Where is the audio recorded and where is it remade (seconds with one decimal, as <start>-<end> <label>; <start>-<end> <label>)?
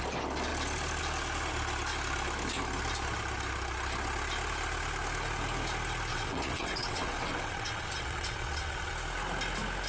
0.0-6.1 recorded; 6.1-8.9 remade; 8.9-9.9 recorded